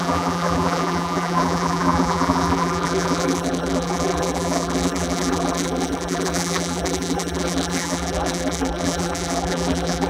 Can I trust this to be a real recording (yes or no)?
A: no